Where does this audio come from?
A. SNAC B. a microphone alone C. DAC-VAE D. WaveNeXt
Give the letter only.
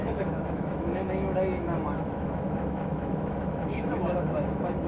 C